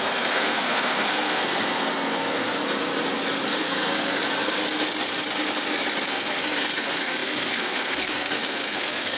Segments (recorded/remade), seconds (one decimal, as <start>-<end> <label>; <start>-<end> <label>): 0.0-2.6 remade; 2.6-3.6 recorded; 3.6-4.2 remade; 4.2-6.1 recorded; 6.1-9.2 remade